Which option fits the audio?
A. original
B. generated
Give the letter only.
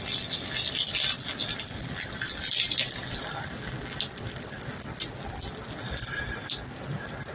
A